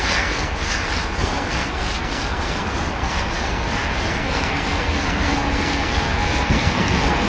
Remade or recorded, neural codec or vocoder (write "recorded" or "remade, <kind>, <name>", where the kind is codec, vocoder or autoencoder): remade, codec, SNAC